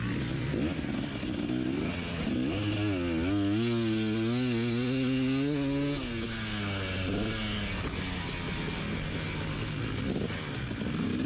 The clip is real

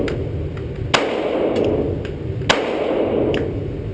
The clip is real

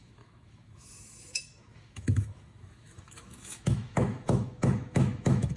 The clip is fake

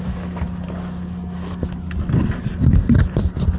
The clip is real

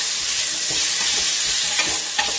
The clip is real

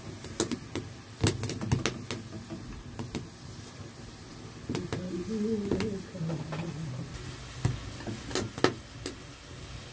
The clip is real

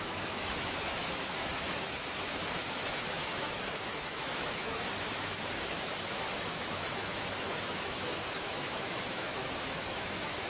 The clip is fake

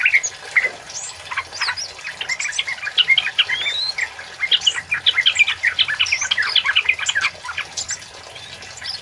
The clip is real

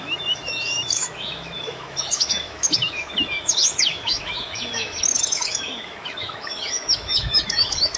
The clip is fake